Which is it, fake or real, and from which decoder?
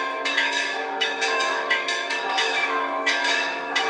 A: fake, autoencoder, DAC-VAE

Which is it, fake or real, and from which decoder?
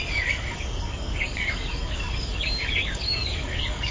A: fake, codec, DAC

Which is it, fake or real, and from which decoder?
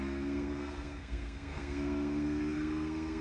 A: fake, codec, SNAC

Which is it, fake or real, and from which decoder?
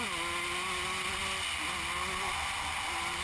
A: real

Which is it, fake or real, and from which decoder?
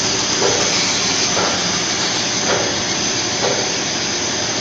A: real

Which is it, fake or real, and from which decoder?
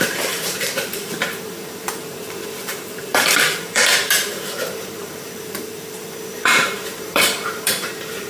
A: fake, vocoder, BigVGAN v2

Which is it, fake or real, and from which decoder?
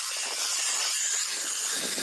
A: real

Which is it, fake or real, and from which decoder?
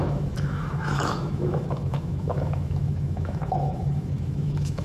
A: fake, autoencoder, DAC-VAE